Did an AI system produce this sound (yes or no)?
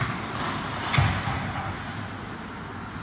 no